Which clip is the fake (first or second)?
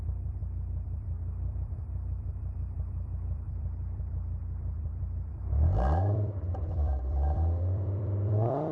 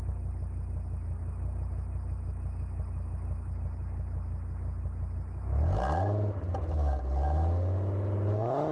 first